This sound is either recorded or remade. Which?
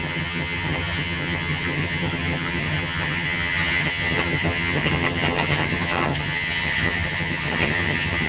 remade